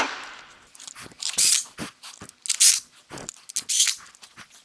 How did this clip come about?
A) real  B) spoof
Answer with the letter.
A